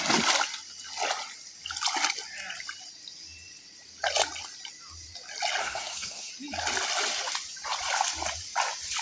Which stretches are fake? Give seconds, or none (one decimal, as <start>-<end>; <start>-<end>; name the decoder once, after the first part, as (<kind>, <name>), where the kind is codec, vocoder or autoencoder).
5.6-6.3 (codec, SNAC)

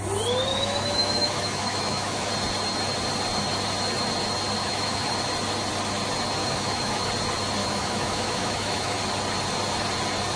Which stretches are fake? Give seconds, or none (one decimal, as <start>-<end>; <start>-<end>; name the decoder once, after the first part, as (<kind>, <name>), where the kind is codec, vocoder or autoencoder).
0.5-2.3 (autoencoder, DAC-VAE); 4.6-5.1; 6.4-7.1; 7.6-9.0

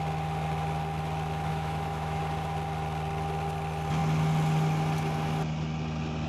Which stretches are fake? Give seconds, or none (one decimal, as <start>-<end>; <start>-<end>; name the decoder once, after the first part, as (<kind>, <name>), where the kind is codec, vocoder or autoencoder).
1.5-2.2 (autoencoder, DAC-VAE)

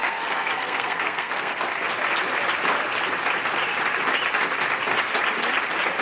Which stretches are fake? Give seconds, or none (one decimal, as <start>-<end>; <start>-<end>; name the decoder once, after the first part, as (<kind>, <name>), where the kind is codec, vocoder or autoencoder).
0.0-1.6 (codec, SNAC)

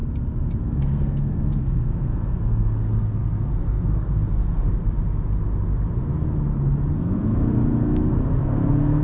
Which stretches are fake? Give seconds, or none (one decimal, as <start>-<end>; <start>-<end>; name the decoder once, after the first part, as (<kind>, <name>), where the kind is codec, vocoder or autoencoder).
0.6-4.8 (codec, SNAC); 6.9-7.6; 8.4-9.0